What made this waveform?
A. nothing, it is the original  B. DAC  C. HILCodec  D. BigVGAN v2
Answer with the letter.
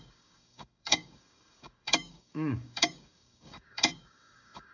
B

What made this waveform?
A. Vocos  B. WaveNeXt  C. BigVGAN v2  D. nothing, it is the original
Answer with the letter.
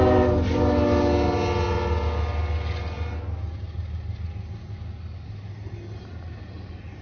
D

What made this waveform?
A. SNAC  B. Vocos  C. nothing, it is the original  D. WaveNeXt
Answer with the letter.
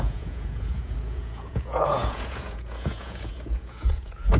B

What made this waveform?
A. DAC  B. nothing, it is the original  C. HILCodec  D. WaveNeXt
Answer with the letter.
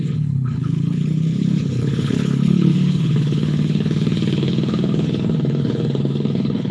C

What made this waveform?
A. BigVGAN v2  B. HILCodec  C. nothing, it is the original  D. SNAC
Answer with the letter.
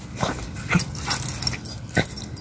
C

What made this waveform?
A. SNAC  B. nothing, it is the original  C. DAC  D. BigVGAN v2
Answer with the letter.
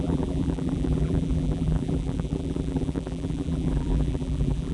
D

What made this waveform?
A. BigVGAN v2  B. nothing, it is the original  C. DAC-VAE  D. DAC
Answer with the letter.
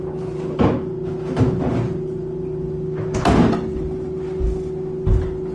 B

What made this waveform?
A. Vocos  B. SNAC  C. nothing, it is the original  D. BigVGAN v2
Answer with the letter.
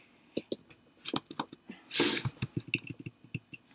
C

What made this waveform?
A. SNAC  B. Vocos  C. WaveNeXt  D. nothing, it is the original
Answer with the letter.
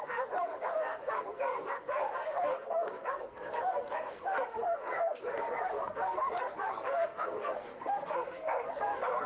A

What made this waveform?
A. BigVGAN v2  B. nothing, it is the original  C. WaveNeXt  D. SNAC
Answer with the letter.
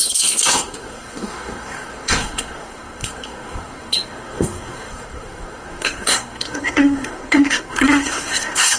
D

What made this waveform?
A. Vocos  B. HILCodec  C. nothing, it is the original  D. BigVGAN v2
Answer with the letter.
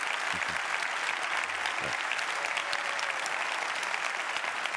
C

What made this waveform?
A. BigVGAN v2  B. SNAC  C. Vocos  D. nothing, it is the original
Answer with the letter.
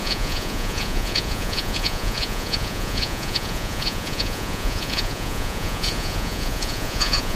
C